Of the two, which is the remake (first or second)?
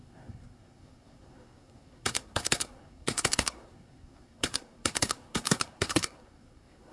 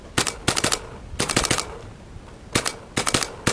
first